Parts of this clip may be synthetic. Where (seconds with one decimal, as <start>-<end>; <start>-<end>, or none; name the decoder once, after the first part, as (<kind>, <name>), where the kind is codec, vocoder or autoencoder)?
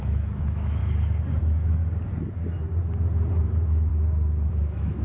0.0-0.8 (autoencoder, DAC-VAE); 1.4-1.8; 3.4-3.9; 4.5-5.0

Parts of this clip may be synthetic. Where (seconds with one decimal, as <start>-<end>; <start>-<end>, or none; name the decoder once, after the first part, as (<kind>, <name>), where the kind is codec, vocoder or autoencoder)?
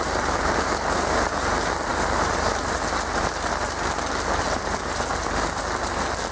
none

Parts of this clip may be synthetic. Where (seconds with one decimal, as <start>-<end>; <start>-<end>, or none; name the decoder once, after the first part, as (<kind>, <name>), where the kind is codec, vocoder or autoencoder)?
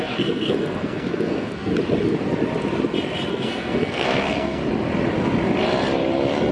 0.0-1.7 (codec, SNAC); 3.3-4.6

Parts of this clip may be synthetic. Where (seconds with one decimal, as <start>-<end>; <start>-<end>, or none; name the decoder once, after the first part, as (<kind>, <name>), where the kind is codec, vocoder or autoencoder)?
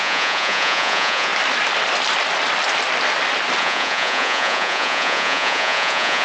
0.0-1.3 (vocoder, Vocos); 3.6-6.2